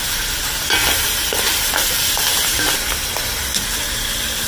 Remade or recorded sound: remade